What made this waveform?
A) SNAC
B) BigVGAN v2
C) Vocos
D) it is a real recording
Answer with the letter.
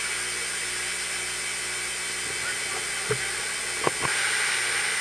D